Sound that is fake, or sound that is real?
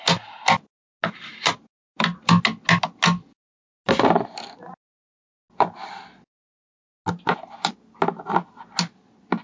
real